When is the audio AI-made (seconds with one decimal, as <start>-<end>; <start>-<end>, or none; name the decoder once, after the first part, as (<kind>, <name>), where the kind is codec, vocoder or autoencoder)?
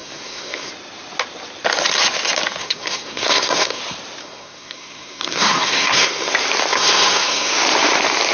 0.0-0.7 (codec, SNAC); 2.6-3.8; 4.2-6.3; 6.7-7.5